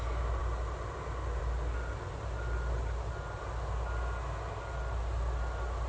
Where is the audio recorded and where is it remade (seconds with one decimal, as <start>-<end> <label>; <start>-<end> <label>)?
0.0-5.9 recorded